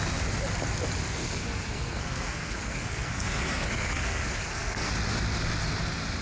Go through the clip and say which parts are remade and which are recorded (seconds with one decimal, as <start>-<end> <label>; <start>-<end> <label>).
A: 0.0-1.2 recorded; 1.2-4.9 remade; 4.9-6.2 recorded